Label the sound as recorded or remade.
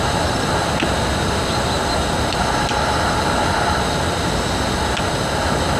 recorded